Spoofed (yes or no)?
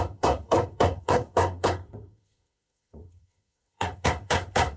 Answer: yes